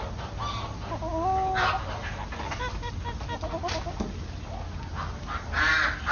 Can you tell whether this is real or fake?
real